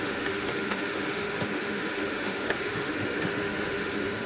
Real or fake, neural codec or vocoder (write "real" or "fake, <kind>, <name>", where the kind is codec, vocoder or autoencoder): fake, autoencoder, DAC-VAE